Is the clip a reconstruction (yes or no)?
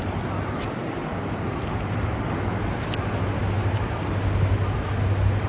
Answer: no